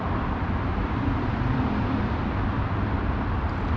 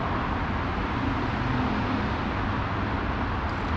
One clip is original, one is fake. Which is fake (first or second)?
first